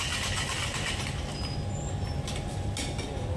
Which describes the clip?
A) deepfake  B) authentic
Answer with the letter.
B